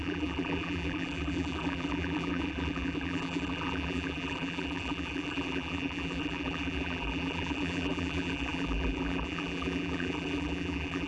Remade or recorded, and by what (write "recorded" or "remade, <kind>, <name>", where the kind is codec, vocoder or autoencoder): remade, vocoder, BigVGAN v2